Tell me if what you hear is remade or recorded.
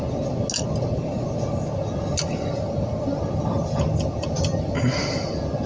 recorded